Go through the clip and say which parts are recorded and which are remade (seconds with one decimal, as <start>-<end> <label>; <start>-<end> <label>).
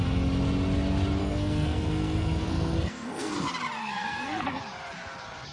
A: 0.0-1.2 recorded; 1.2-3.3 remade; 3.3-3.8 recorded; 3.8-4.6 remade; 4.6-5.5 recorded